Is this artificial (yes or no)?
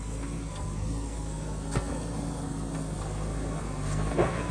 yes